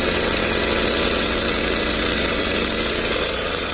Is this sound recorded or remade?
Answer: remade